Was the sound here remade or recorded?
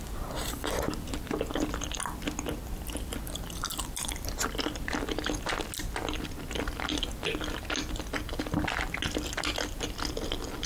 recorded